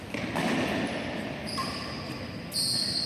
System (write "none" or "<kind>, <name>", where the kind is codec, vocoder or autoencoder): none